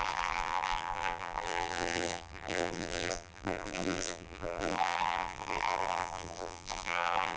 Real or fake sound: fake